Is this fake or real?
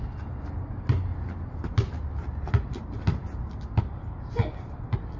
real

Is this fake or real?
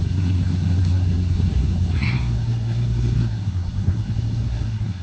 fake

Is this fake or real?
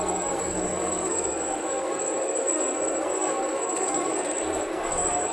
fake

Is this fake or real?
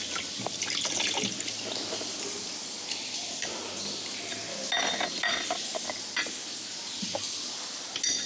real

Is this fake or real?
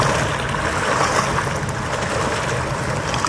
real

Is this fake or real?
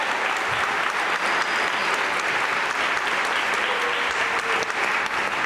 real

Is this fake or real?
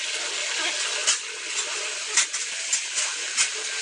real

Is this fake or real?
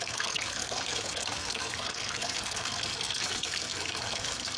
fake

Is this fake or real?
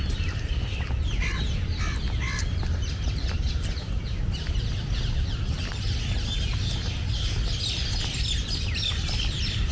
real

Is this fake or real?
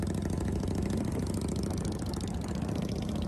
real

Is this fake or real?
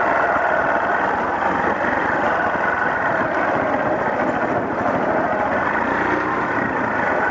real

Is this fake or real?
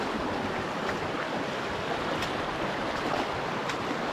real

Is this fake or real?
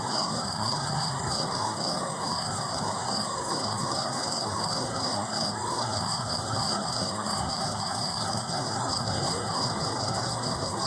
fake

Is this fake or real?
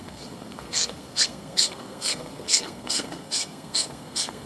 fake